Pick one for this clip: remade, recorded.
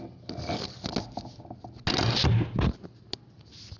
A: recorded